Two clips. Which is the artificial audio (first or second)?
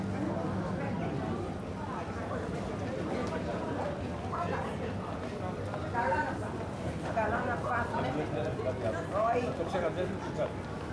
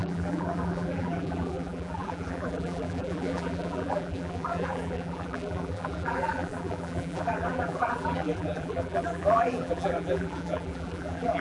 second